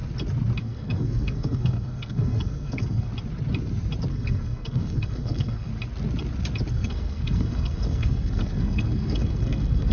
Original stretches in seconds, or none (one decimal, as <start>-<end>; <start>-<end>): 0.0-0.6; 3.1-4.1; 5.7-6.7